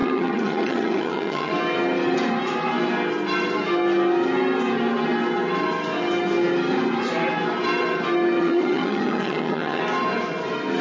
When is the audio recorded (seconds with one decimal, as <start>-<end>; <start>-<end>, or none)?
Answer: 1.5-8.4; 9.8-10.8